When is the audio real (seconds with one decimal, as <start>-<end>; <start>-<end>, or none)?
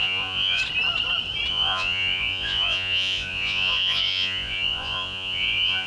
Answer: 0.6-1.5